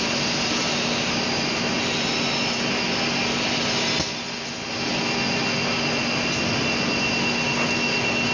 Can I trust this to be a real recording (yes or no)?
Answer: yes